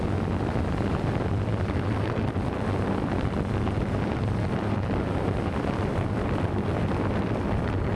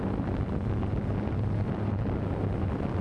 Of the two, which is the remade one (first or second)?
first